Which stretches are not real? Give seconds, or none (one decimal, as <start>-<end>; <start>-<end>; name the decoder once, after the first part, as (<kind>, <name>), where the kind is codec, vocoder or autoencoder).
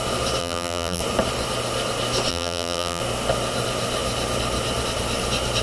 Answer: 0.4-1.0 (vocoder, BigVGAN v2); 2.3-3.0